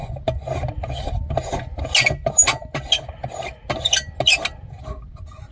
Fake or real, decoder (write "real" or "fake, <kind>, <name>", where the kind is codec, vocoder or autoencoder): real